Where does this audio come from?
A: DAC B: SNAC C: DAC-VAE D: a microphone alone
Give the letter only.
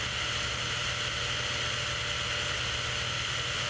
D